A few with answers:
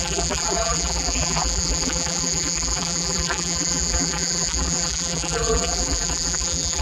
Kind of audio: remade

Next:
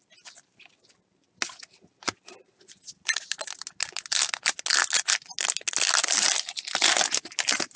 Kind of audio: recorded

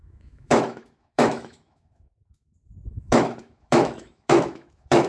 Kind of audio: remade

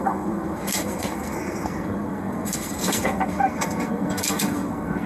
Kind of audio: remade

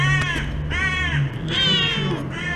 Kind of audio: recorded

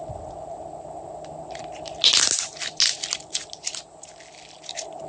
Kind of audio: recorded